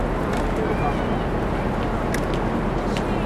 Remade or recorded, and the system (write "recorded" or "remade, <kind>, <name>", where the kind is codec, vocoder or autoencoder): recorded